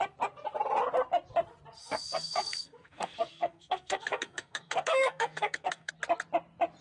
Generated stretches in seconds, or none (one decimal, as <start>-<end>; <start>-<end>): 1.8-5.9

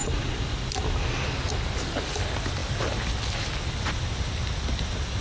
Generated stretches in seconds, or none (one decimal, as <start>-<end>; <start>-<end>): none

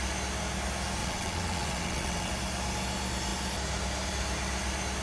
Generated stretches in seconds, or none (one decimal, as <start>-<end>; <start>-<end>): 1.0-2.3

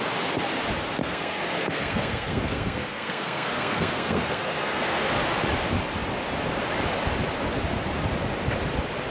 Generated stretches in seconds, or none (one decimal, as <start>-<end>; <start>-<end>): 1.0-5.1